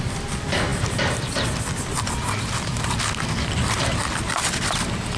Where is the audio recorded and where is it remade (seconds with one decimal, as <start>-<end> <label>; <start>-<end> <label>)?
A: 0.0-2.7 remade; 2.7-3.7 recorded; 3.7-5.2 remade